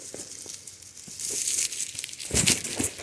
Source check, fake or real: real